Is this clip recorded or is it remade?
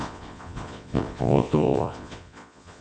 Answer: remade